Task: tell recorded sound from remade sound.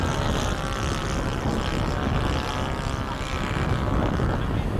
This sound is recorded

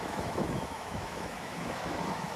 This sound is remade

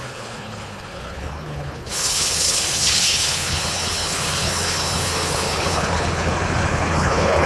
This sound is remade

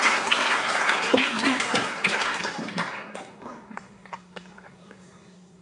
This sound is remade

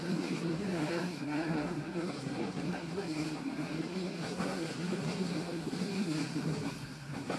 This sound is remade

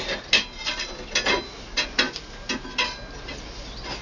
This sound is recorded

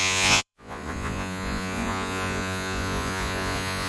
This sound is remade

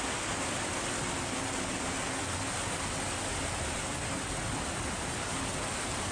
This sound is recorded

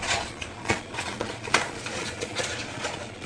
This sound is remade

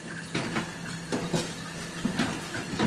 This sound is recorded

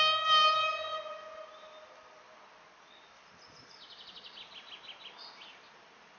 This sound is recorded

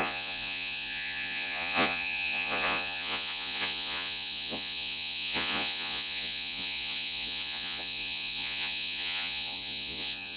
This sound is remade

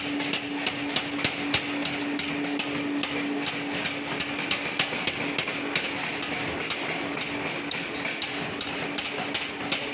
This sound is recorded